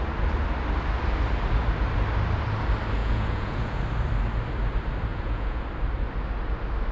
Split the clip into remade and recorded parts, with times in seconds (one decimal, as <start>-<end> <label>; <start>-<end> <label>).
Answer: 0.0-3.0 recorded; 3.0-3.8 remade; 3.8-5.1 recorded; 5.1-5.6 remade; 5.6-6.9 recorded

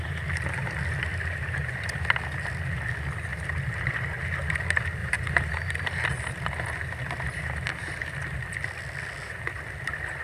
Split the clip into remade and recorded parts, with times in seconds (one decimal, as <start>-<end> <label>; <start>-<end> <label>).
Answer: 0.0-1.1 recorded; 1.1-1.9 remade; 1.9-3.3 recorded; 3.3-3.9 remade; 3.9-5.0 recorded; 5.0-5.7 remade; 5.7-10.2 recorded

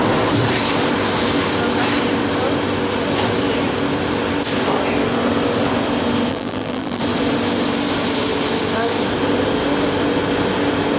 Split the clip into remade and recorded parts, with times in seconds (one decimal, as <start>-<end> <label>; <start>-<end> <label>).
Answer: 0.0-6.3 recorded; 6.3-7.0 remade; 7.0-11.0 recorded

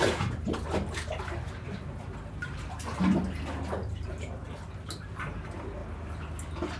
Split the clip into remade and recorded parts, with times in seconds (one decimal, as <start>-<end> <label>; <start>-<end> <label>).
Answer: 0.0-6.8 recorded

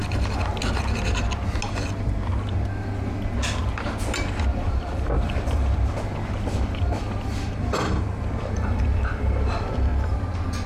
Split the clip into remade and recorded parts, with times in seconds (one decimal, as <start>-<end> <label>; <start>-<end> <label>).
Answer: 0.0-4.6 recorded; 4.6-9.9 remade; 9.9-10.7 recorded